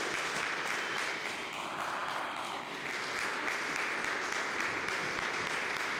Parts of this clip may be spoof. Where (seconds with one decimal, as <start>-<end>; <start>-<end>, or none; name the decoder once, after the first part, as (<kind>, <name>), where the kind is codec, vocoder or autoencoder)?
none